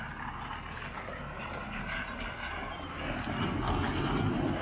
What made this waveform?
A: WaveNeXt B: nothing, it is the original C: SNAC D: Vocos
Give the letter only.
B